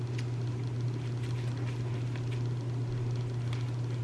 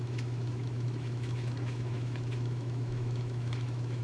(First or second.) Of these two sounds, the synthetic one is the second